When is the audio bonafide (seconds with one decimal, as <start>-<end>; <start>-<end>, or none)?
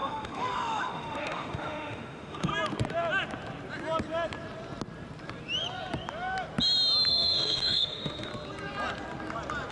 2.5-7.1; 8.3-9.7